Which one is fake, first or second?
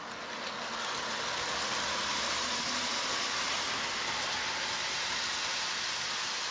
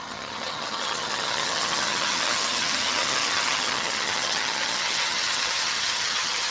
second